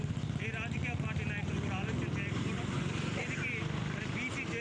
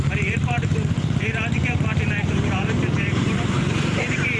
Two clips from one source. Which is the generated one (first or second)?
second